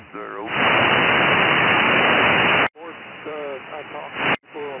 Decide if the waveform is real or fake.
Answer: real